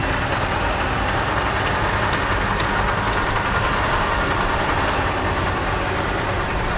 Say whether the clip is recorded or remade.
recorded